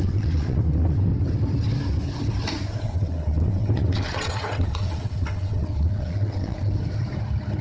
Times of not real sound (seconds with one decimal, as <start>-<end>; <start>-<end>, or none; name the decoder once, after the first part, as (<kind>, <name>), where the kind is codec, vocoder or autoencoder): 0.0-1.1 (vocoder, WaveNeXt); 2.7-6.7